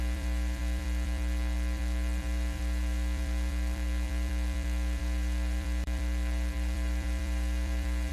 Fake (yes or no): yes